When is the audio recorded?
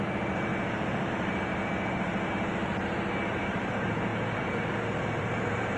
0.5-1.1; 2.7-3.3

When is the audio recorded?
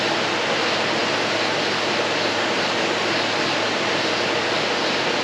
0.0-5.2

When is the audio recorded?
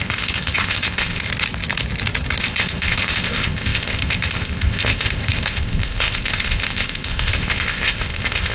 1.3-2.4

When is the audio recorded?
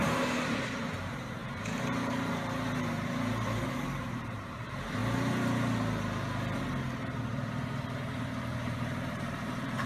5.0-7.3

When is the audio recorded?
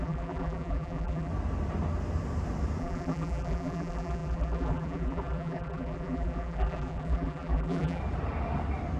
1.3-2.8; 8.0-9.0